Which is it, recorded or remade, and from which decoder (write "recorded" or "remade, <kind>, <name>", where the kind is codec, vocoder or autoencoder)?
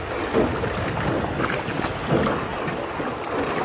recorded